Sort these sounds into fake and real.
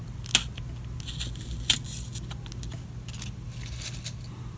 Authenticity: real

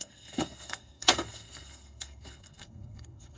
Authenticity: fake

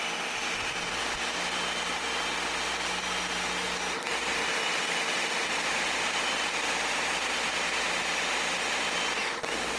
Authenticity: real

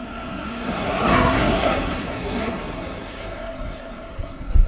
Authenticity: fake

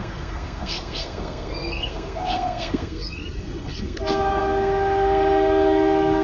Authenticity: fake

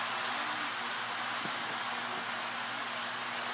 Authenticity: real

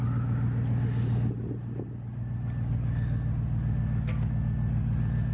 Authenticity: real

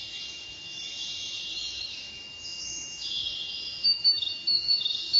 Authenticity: fake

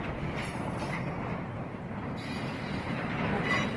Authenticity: real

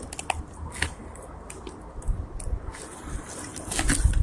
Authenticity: real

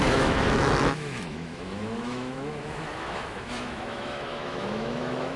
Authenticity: fake